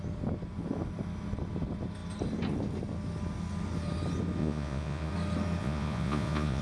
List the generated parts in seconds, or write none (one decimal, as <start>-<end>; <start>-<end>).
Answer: 4.4-5.1; 5.6-6.6